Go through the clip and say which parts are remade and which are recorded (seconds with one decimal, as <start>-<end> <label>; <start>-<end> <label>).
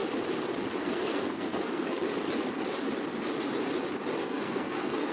0.0-0.8 recorded; 0.8-2.0 remade; 2.0-4.2 recorded; 4.2-5.1 remade